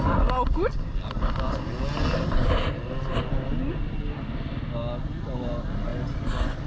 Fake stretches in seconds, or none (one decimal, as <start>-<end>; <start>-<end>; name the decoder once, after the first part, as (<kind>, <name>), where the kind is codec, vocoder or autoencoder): none